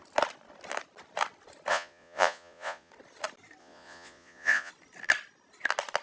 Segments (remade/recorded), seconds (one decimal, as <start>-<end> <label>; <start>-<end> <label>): 0.0-1.7 recorded; 1.7-2.9 remade; 2.9-3.6 recorded; 3.6-4.7 remade; 4.7-6.0 recorded